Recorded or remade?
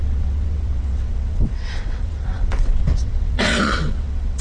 remade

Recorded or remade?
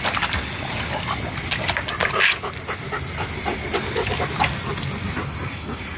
recorded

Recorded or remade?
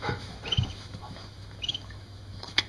remade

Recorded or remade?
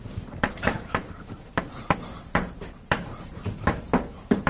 remade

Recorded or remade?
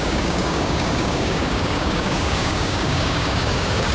remade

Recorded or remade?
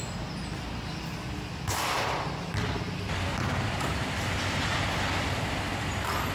recorded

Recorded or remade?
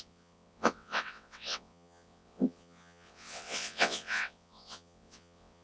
remade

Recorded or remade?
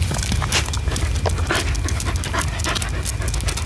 recorded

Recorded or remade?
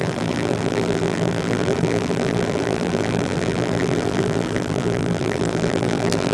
remade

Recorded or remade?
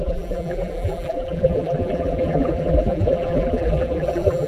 remade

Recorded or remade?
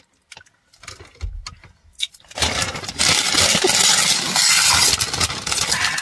recorded